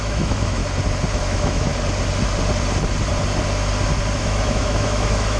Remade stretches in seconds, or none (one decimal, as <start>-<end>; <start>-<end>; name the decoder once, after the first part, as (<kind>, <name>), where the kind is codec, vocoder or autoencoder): 0.0-0.6 (autoencoder, DAC-VAE); 1.1-1.7; 4.2-5.4